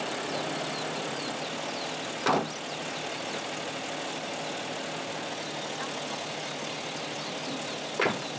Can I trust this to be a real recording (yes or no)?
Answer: yes